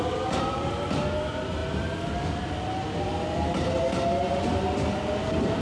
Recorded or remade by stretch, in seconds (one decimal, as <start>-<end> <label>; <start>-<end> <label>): 0.0-5.6 recorded

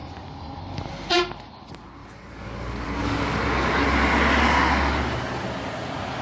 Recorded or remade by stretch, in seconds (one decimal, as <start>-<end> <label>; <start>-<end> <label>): 0.0-0.6 remade; 0.6-2.0 recorded; 2.0-3.8 remade; 3.8-6.2 recorded

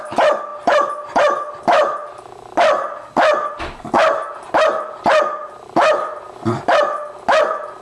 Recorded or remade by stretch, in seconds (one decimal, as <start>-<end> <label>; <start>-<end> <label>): 0.0-7.8 recorded

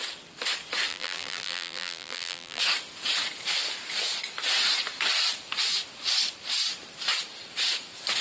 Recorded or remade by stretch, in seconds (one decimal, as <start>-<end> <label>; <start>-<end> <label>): 0.0-0.9 recorded; 0.9-2.6 remade; 2.6-8.2 recorded

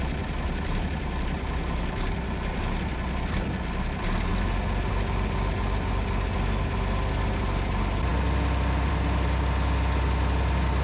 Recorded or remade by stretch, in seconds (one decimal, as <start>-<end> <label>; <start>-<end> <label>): 0.0-10.8 recorded

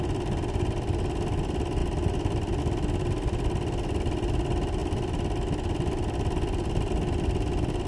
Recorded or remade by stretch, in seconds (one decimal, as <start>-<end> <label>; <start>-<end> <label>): 0.0-7.9 recorded

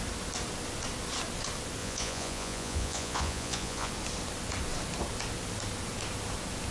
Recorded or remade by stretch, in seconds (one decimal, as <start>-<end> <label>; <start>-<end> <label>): 0.0-1.8 recorded; 1.8-3.9 remade; 3.9-6.7 recorded

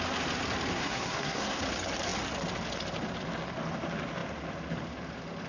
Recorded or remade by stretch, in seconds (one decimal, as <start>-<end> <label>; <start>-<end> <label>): 0.0-0.7 recorded; 0.7-1.6 remade; 1.6-5.5 recorded